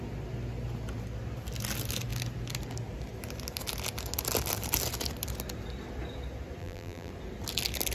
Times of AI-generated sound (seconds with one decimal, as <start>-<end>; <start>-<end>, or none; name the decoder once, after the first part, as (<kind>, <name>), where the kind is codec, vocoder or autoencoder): 6.6-7.1 (vocoder, BigVGAN v2)